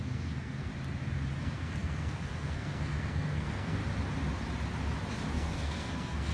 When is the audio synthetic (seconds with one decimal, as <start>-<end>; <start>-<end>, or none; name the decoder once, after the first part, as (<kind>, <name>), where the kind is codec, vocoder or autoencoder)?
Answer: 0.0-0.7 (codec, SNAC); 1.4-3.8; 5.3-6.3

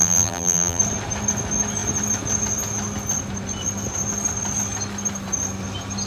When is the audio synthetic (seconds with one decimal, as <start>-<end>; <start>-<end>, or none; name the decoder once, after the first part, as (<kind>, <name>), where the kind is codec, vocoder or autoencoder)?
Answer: 0.0-0.8 (vocoder, BigVGAN v2)

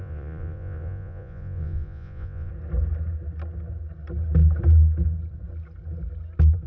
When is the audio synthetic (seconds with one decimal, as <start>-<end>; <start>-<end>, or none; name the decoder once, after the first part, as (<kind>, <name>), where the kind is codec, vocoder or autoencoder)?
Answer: 0.0-2.5 (vocoder, Vocos)

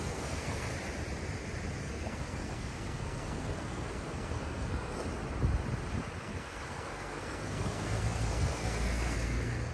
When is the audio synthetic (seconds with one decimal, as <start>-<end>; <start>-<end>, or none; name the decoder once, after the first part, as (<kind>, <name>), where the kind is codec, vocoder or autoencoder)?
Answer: 0.0-0.7 (codec, SNAC); 1.8-5.0; 6.2-9.7

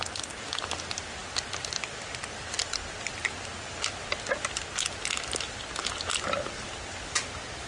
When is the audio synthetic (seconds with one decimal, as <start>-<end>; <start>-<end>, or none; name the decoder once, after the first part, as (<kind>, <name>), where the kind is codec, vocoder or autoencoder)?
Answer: none